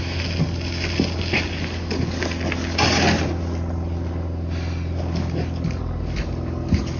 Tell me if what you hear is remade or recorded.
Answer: recorded